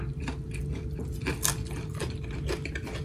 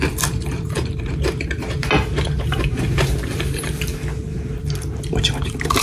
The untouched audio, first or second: first